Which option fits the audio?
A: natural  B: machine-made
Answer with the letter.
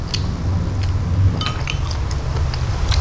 A